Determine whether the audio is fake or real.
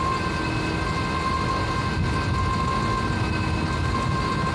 real